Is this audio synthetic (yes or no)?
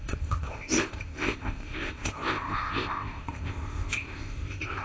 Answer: yes